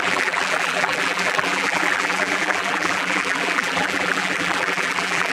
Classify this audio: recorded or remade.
remade